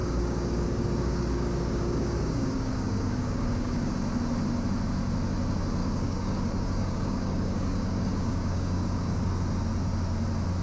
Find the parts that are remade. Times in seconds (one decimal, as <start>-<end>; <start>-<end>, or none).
0.0-3.9; 5.8-9.3